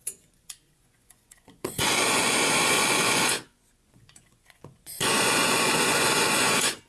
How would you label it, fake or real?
fake